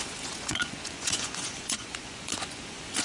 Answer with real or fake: fake